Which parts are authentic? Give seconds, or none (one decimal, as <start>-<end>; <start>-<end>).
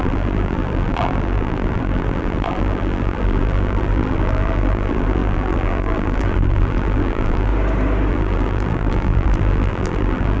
7.5-8.1